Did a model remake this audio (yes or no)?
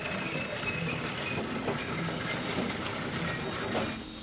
no